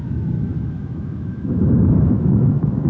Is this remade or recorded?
remade